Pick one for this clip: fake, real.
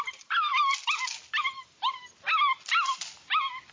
real